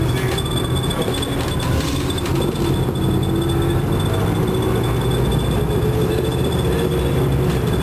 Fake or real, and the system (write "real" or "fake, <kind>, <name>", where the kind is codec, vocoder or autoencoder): real